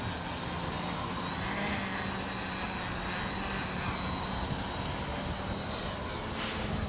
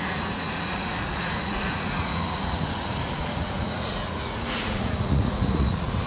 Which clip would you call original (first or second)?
first